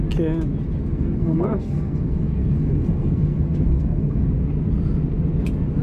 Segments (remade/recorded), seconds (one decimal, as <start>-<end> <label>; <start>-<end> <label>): 0.0-0.8 recorded; 0.8-4.3 remade; 4.3-5.8 recorded